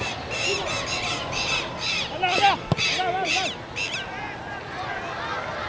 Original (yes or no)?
yes